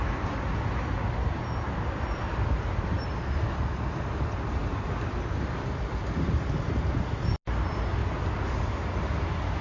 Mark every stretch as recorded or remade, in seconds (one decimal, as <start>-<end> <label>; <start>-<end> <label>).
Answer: 0.0-9.6 recorded